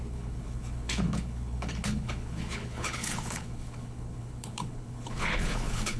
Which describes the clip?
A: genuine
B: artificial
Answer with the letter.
B